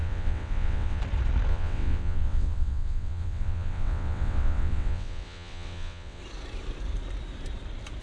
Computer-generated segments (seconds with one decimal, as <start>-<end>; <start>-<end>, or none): 0.0-1.0; 1.5-6.2